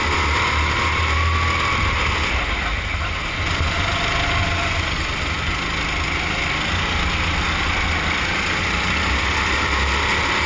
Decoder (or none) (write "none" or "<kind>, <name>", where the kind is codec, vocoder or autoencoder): none